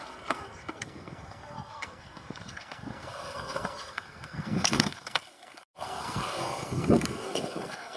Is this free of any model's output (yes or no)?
no